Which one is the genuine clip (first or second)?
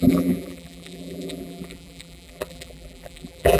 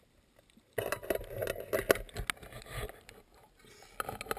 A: second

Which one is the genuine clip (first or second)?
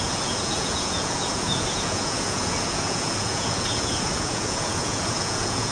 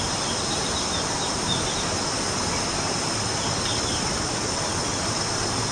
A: second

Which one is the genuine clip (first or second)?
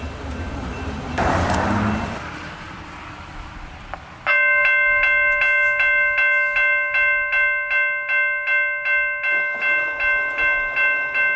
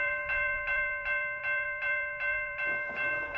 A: first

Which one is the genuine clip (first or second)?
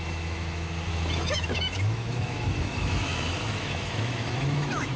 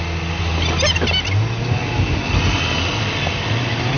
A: second